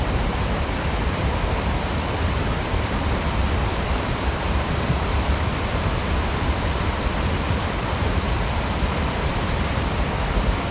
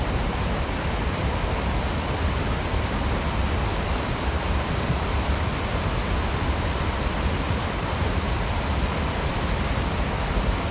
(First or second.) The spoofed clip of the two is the first